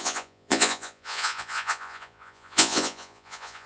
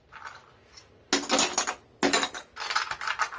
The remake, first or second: first